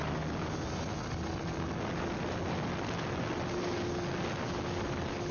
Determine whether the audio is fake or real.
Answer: real